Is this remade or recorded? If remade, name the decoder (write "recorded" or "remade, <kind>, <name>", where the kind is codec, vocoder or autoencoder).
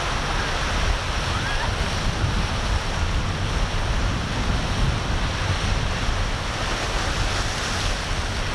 recorded